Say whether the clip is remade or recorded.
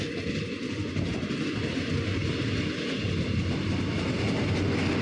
recorded